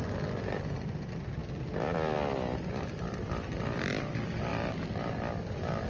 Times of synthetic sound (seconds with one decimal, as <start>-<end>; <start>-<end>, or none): none